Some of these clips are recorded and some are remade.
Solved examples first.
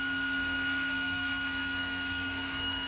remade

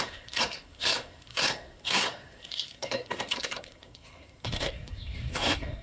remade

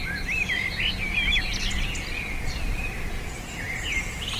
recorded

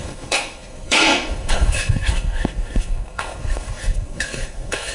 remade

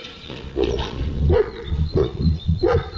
remade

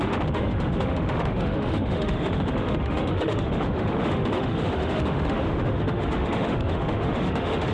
remade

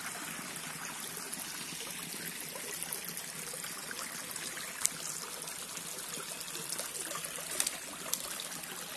recorded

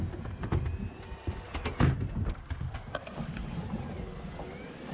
recorded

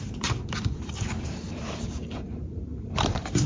remade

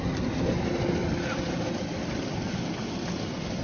recorded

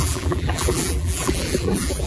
remade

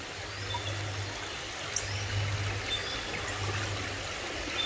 recorded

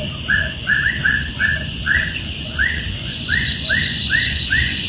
remade